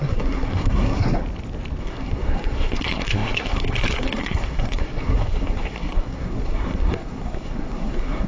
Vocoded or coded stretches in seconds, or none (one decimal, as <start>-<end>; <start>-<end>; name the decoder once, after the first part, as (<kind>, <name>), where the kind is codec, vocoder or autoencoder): 0.0-1.2 (codec, SNAC); 1.8-8.3